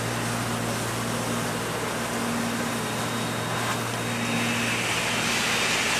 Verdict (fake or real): real